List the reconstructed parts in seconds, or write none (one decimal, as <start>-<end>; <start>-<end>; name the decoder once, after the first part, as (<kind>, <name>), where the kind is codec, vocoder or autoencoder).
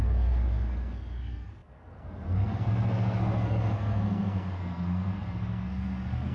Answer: 0.0-6.3 (codec, SNAC)